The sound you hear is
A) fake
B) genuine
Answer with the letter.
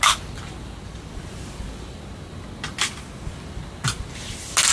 B